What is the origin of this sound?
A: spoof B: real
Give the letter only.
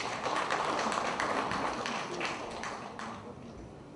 B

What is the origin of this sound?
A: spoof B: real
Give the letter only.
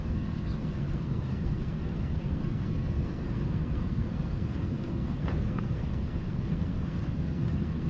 A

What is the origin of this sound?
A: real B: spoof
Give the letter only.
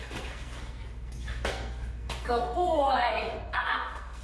B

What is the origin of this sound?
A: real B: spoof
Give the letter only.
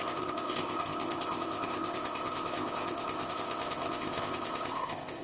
B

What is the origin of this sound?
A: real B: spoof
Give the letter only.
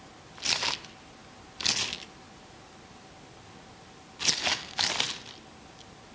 A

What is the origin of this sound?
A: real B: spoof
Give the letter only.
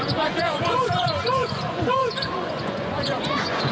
B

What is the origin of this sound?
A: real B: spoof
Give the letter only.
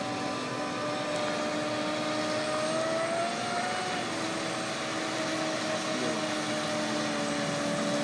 A